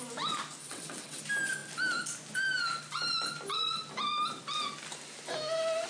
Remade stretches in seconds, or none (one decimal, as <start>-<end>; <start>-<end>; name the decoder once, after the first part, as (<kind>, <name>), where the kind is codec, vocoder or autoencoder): 0.6-1.2 (vocoder, WaveNeXt)